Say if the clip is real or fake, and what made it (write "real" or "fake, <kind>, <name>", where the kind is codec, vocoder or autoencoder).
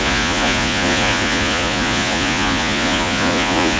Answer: fake, vocoder, Vocos